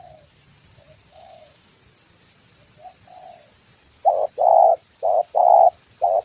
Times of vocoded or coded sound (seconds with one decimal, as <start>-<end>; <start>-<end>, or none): 1.1-1.7